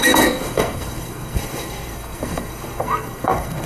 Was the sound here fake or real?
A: fake